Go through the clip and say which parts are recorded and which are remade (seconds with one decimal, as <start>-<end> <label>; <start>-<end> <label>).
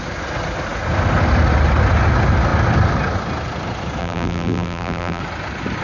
0.0-4.0 recorded; 4.0-5.2 remade; 5.2-5.8 recorded